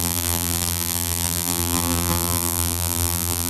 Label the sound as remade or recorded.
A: remade